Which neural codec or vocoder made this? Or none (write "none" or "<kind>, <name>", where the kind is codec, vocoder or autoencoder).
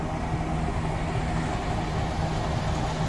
none